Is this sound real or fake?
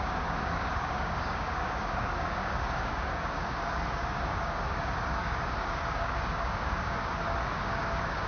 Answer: fake